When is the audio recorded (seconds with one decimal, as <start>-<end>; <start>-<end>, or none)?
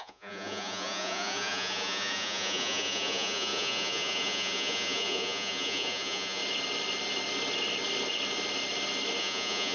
6.4-9.2